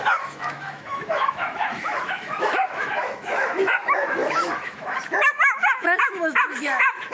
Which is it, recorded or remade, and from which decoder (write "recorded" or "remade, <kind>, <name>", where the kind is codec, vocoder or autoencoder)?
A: remade, autoencoder, DAC-VAE